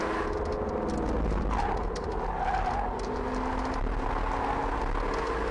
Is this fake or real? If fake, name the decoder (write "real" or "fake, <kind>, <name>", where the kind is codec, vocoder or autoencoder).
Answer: real